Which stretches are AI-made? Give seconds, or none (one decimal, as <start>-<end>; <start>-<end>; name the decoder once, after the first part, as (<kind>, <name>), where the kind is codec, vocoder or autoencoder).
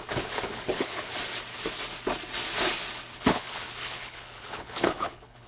0.0-1.1 (codec, HILCodec); 3.2-5.5